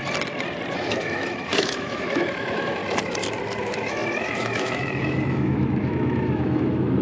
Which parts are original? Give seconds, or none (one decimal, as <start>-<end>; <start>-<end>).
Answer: 0.0-0.9; 2.8-3.6